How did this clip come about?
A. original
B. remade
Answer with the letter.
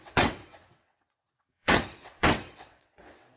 B